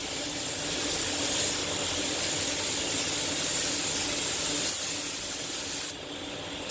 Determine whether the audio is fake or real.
real